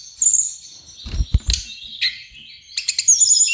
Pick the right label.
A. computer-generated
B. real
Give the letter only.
B